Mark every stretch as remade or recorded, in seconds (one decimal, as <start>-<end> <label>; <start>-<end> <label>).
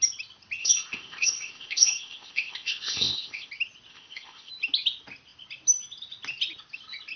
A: 0.0-0.6 recorded; 0.6-3.5 remade; 3.5-3.9 recorded; 3.9-4.5 remade; 4.5-7.2 recorded